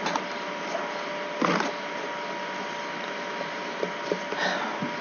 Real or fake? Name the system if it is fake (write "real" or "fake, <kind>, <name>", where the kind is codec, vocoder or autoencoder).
real